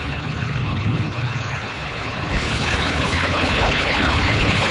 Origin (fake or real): fake